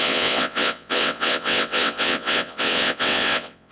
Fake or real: fake